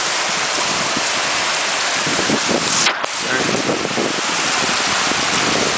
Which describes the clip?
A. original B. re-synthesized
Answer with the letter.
A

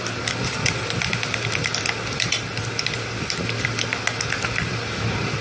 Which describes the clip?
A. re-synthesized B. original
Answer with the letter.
B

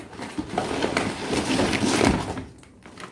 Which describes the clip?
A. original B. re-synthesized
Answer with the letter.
A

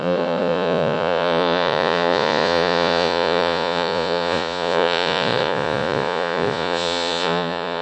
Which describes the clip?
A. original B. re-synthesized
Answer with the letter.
B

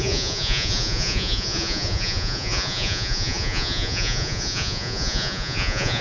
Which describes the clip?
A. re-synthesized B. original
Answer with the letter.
A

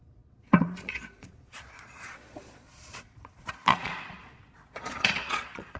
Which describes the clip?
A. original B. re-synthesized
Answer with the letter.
B